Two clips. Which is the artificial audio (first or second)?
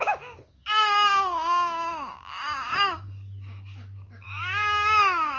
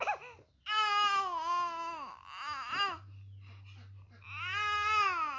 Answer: first